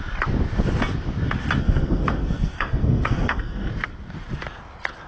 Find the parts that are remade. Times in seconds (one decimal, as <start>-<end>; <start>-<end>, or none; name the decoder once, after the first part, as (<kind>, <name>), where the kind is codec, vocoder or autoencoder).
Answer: 1.6-3.7 (codec, SNAC)